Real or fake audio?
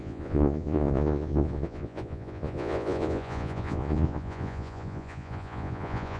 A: fake